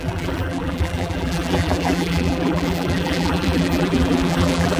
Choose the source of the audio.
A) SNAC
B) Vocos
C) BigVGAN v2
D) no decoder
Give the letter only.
C